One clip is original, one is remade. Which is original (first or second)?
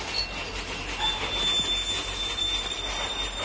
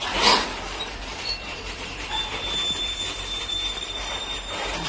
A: first